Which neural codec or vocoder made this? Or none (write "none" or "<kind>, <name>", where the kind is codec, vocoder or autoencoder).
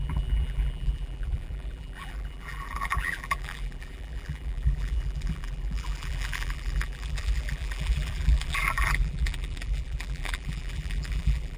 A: vocoder, BigVGAN v2